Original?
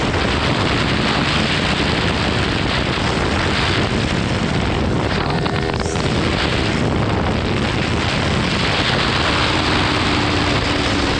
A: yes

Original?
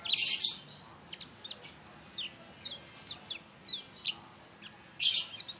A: yes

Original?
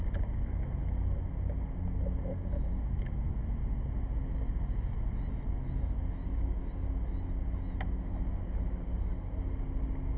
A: yes